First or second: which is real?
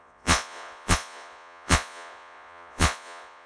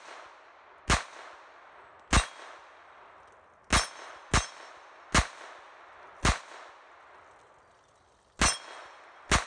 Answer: second